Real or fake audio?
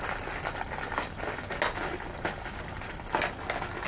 real